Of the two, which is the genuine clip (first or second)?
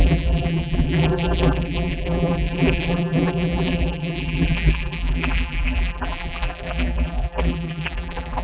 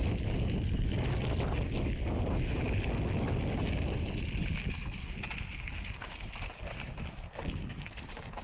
second